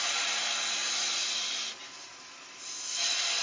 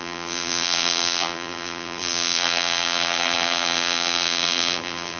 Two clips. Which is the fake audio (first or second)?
second